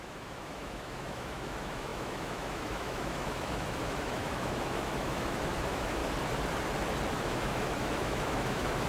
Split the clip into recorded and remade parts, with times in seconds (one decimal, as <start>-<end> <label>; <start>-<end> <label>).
0.0-6.0 remade; 6.0-7.1 recorded; 7.1-8.9 remade